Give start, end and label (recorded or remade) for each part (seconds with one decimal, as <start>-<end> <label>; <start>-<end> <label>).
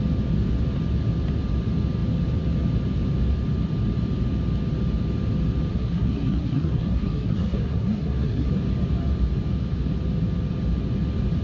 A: 0.0-5.7 recorded; 5.7-8.5 remade; 8.5-11.4 recorded